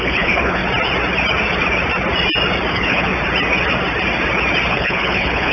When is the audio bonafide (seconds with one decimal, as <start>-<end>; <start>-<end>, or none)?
0.6-2.7; 3.1-4.7